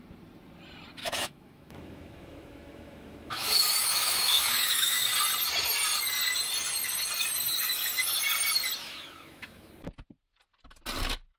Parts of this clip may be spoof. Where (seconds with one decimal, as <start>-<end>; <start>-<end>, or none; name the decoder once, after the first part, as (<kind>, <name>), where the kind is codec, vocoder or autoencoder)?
1.0-5.0 (autoencoder, DAC-VAE); 8.8-9.7